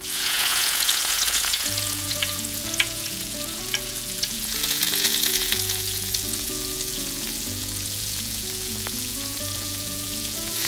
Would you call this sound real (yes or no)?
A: no